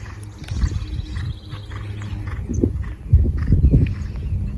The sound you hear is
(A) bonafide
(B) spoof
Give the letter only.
A